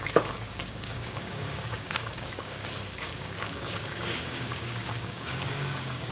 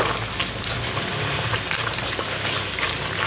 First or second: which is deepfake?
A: first